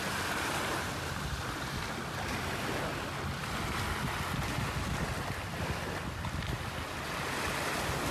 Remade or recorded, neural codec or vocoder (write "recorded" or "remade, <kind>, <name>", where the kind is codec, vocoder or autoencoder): recorded